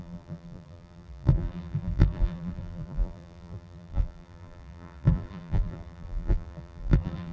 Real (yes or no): no